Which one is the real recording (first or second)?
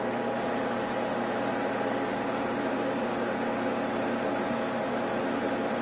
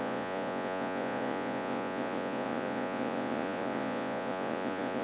first